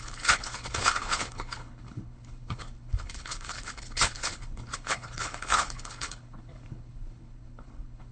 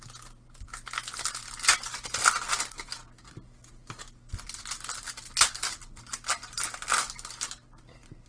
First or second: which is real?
second